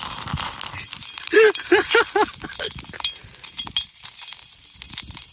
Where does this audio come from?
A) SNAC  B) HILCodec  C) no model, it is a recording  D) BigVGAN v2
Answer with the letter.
C